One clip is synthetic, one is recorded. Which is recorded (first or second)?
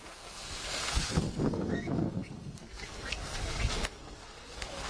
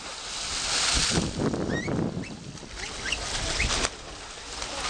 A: second